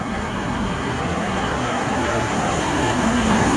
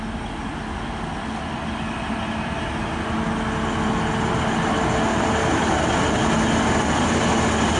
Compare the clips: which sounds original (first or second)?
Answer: second